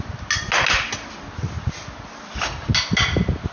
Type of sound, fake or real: real